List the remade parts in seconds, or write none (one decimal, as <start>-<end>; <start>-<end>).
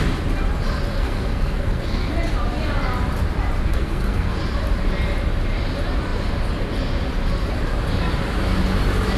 0.9-2.1; 3.7-4.4